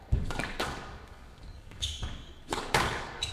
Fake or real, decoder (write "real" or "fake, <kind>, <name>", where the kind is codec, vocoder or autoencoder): fake, codec, DAC